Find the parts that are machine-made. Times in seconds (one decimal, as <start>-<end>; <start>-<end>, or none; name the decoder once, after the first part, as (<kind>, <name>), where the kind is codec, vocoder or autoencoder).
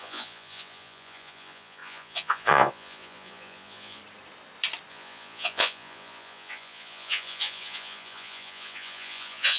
0.0-4.0 (vocoder, Vocos); 4.9-9.6